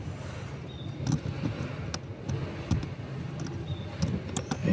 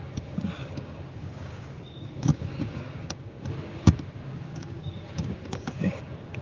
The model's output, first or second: second